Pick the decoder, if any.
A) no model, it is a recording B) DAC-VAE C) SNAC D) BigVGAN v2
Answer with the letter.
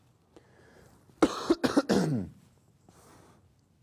A